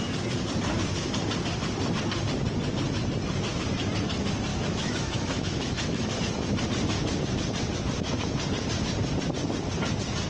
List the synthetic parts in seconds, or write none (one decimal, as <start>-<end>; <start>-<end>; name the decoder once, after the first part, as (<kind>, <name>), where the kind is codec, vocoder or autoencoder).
4.5-6.1 (autoencoder, DAC-VAE)